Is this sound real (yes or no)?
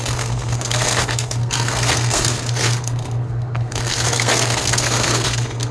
no